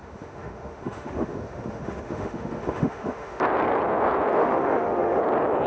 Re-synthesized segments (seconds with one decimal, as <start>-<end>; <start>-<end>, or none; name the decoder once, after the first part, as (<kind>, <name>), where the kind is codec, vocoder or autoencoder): 0.0-3.4 (autoencoder, DAC-VAE); 4.4-5.2